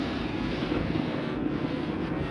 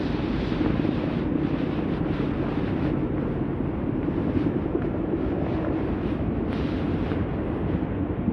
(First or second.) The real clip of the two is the second